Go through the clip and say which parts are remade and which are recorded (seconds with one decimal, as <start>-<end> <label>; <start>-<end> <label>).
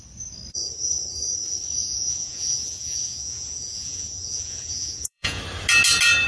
0.0-1.8 recorded; 1.8-5.4 remade; 5.4-6.3 recorded